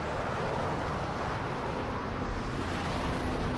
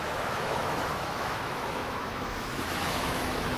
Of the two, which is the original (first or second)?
first